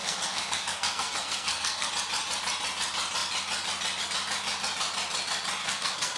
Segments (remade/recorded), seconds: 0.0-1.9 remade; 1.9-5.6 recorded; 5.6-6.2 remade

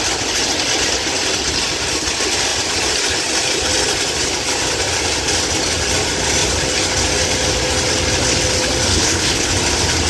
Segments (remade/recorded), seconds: 0.0-8.9 recorded; 8.9-9.5 remade; 9.5-10.1 recorded

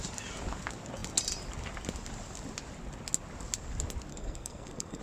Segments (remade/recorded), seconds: 0.0-4.1 recorded; 4.1-5.0 remade

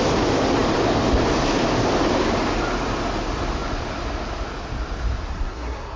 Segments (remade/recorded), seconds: 0.0-5.3 recorded; 5.3-6.0 remade

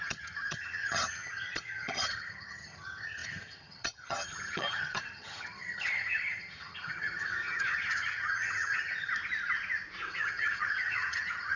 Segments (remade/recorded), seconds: 0.0-9.1 remade; 9.1-10.1 recorded; 10.1-11.6 remade

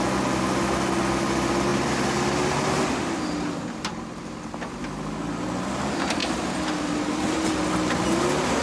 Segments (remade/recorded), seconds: 0.0-8.6 recorded